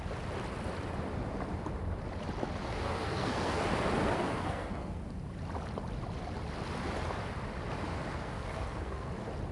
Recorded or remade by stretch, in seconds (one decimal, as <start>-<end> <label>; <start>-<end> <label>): 0.0-2.6 recorded; 2.6-3.6 remade; 3.6-4.0 recorded; 4.0-5.0 remade; 5.0-8.1 recorded; 8.1-9.1 remade; 9.1-9.5 recorded